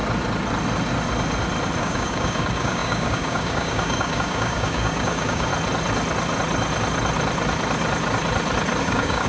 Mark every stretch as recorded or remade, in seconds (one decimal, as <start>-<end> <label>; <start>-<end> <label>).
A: 0.0-1.8 recorded; 1.8-5.5 remade; 5.5-8.8 recorded; 8.8-9.3 remade